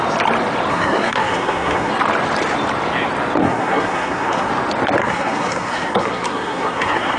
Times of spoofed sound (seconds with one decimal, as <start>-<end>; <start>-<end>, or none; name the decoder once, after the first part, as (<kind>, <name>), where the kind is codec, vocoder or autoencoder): 0.7-1.9 (codec, SNAC); 3.4-4.5; 5.0-7.2